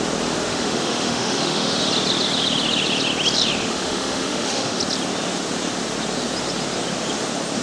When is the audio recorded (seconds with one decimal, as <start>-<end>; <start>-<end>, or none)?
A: 0.0-0.5; 1.9-3.6; 4.8-7.6